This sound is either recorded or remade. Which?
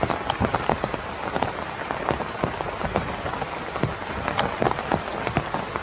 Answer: recorded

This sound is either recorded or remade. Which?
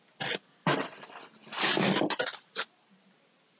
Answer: recorded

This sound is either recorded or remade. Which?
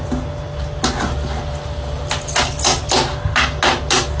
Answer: recorded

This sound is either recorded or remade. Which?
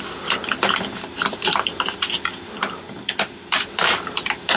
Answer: recorded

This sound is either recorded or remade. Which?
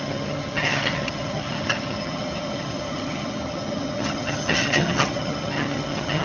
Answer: remade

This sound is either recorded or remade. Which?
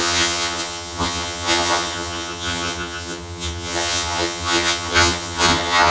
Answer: remade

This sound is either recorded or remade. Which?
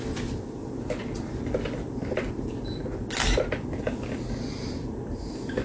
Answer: recorded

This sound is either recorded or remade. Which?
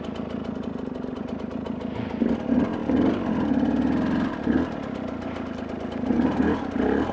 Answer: recorded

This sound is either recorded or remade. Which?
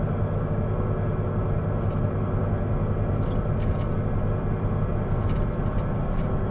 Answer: recorded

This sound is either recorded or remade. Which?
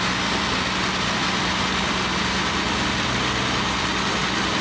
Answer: recorded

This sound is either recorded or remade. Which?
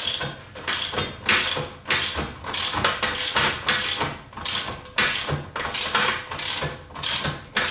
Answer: recorded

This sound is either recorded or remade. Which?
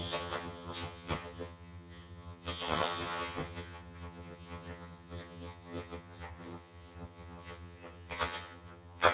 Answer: remade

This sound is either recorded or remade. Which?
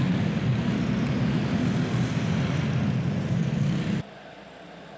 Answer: recorded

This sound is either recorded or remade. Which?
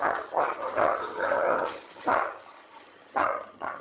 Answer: remade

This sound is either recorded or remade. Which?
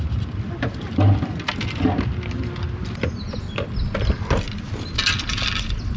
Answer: recorded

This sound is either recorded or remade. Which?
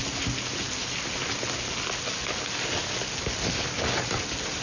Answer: recorded